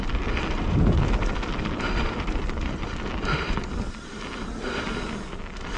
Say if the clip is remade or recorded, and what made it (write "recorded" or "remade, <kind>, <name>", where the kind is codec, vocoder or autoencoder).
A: recorded